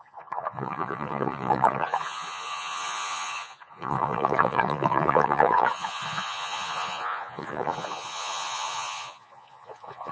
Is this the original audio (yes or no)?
no